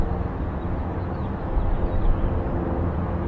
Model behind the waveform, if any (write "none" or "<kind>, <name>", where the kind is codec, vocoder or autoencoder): none